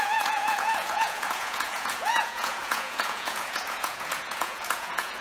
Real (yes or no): no